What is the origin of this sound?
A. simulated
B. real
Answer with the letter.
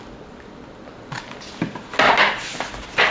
B